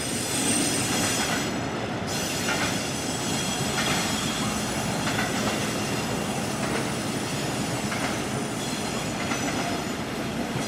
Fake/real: real